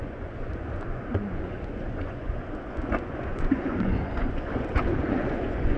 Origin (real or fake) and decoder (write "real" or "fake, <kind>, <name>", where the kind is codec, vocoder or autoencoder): fake, vocoder, Vocos